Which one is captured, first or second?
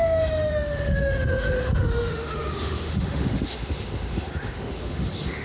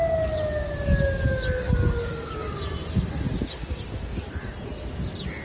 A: second